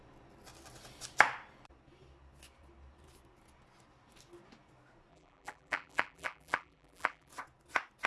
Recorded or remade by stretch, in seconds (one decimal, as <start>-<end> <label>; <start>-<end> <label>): 0.0-5.1 recorded; 5.1-7.3 remade; 7.3-8.1 recorded